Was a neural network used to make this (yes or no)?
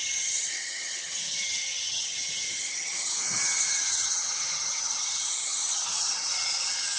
yes